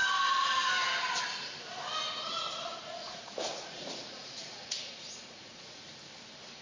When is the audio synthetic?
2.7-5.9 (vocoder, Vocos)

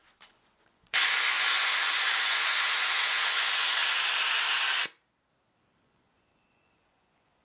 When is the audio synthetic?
0.0-3.8 (vocoder, Vocos); 5.8-7.4

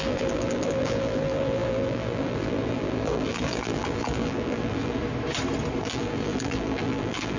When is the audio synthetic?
0.0-5.0 (vocoder, BigVGAN v2); 5.8-7.4

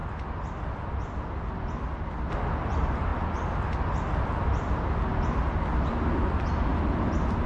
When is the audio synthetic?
6.7-7.5 (vocoder, BigVGAN v2)

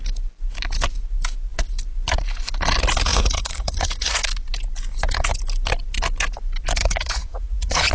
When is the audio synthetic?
3.1-4.2 (vocoder, Vocos); 6.8-7.9

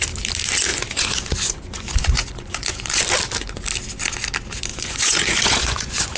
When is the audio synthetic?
0.7-3.0 (vocoder, Vocos); 4.7-6.2

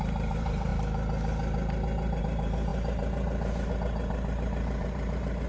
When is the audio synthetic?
0.0-0.7 (vocoder, BigVGAN v2); 2.2-5.5

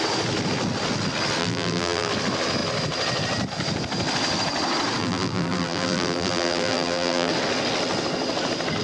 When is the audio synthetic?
1.4-2.1 (vocoder, BigVGAN v2); 5.0-7.3